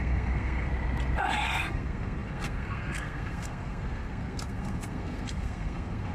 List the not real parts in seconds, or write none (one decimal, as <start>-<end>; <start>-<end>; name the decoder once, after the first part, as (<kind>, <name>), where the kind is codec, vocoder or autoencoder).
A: 0.0-0.7 (codec, SNAC); 1.3-6.1